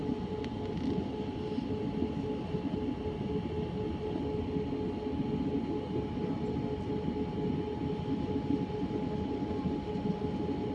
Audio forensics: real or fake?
real